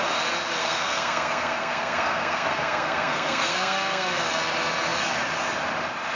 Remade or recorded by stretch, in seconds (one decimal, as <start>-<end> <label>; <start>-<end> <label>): 0.0-0.6 recorded; 0.6-4.3 remade; 4.3-6.2 recorded

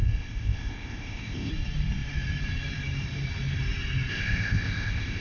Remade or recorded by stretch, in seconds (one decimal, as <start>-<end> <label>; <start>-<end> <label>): 0.0-1.5 remade; 1.5-4.1 recorded; 4.1-5.2 remade

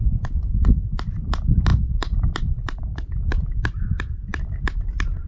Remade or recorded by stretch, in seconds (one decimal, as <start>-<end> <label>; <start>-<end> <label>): 0.0-1.7 recorded; 1.7-2.8 remade; 2.8-4.3 recorded; 4.3-5.3 remade

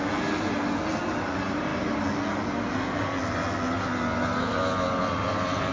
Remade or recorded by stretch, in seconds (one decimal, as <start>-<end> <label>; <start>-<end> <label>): 0.0-5.7 recorded